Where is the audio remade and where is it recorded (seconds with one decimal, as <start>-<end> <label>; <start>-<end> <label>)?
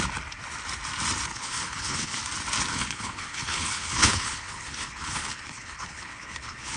0.0-1.3 recorded; 1.3-2.2 remade; 2.2-2.7 recorded; 2.7-6.8 remade